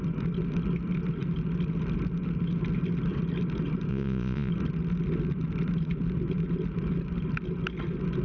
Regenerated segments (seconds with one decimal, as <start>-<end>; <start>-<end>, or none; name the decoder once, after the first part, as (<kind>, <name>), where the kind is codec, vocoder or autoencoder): 3.9-4.5 (vocoder, Vocos)